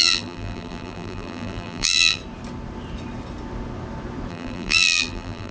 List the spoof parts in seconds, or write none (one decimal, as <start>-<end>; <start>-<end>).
0.0-2.2; 4.3-5.5